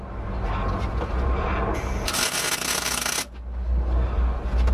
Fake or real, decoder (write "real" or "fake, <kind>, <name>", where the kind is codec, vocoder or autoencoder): real